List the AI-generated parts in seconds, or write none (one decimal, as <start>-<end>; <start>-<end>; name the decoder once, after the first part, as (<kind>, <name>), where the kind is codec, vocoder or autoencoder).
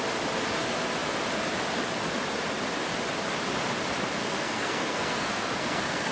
4.2-6.1 (codec, SNAC)